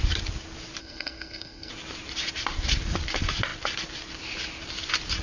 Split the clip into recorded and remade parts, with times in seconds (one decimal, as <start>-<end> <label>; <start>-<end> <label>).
0.0-0.8 recorded; 0.8-1.7 remade; 1.7-5.2 recorded